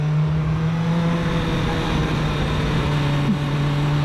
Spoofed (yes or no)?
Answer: no